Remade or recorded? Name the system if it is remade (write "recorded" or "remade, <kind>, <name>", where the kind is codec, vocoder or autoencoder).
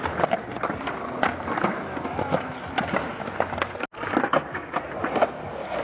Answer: recorded